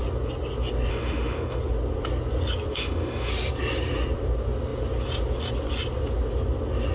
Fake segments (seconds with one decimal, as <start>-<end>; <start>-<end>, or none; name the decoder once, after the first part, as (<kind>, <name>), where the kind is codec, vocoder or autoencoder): 0.9-1.6 (autoencoder, DAC-VAE); 2.7-3.3